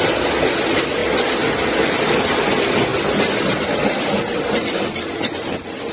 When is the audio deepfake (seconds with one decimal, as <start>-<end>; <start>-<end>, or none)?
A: none